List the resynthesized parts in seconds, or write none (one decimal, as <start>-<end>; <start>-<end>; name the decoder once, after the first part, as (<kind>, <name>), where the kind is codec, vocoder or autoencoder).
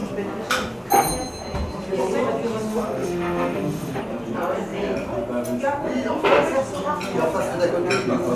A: 2.7-4.0 (autoencoder, DAC-VAE)